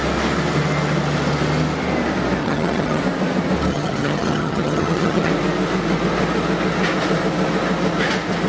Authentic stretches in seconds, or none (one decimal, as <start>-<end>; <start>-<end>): 0.0-2.4; 3.0-3.7; 5.3-8.5